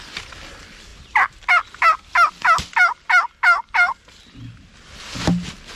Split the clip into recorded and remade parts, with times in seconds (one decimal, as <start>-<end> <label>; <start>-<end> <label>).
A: 0.0-5.8 recorded